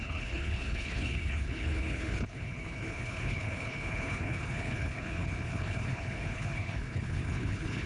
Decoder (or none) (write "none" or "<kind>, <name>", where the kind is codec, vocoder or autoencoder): codec, HILCodec